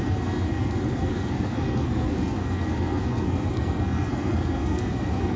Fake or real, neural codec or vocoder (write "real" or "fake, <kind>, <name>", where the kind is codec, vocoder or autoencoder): fake, codec, SNAC